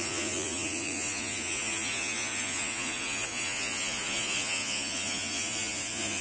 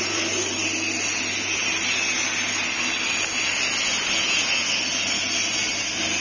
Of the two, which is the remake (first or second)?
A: first